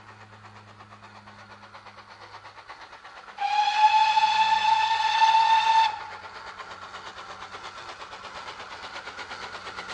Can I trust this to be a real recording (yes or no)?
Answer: yes